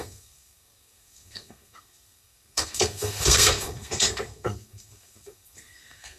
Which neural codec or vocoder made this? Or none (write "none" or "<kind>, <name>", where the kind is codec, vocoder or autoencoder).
codec, SNAC